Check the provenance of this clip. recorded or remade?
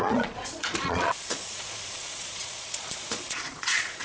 remade